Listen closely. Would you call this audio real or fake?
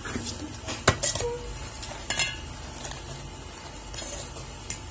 real